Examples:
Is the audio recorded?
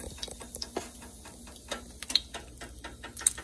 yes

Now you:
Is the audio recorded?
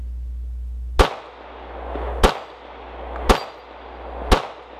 yes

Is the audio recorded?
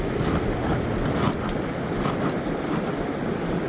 yes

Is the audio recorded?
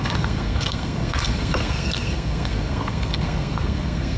no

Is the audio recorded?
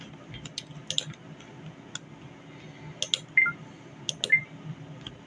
yes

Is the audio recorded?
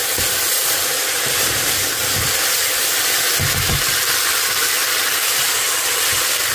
yes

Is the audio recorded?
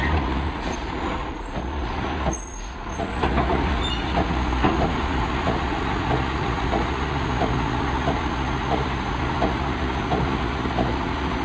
no